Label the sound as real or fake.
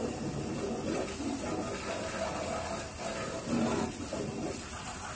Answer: real